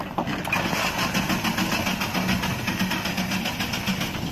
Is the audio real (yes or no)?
yes